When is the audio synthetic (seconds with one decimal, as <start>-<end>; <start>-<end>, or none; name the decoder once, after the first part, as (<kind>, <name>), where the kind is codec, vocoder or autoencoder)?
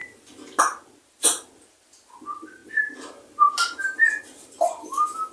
4.8-5.3 (autoencoder, DAC-VAE)